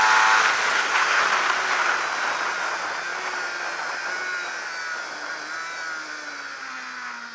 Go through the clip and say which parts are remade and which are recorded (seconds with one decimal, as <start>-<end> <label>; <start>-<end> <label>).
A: 0.0-0.7 recorded; 0.7-1.2 remade; 1.2-7.3 recorded